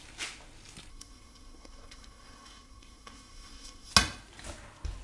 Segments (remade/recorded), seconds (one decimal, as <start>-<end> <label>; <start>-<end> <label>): 0.0-0.9 recorded; 0.9-3.9 remade; 3.9-5.0 recorded